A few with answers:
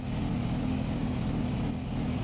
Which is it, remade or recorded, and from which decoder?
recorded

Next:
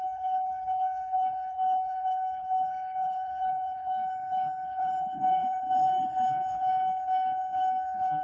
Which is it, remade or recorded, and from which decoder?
remade, codec, HILCodec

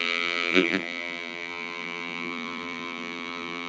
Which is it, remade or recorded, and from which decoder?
remade, vocoder, BigVGAN v2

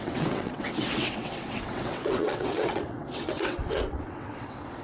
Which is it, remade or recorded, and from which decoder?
remade, vocoder, WaveNeXt